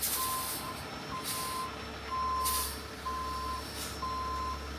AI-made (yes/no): no